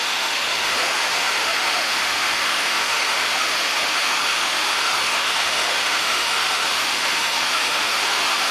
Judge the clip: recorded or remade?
remade